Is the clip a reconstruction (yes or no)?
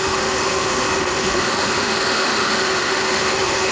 yes